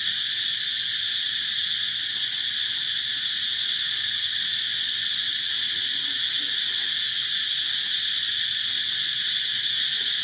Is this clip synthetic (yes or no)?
no